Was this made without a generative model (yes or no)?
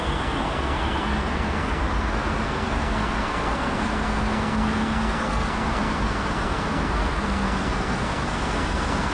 no